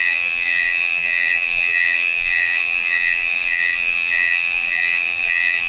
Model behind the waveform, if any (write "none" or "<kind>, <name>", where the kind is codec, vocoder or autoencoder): vocoder, BigVGAN v2